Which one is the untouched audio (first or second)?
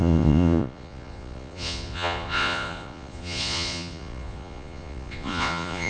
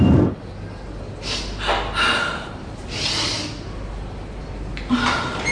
second